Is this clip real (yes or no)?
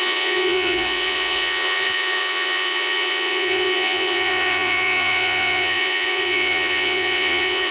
no